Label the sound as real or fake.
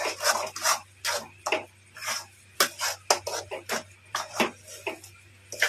real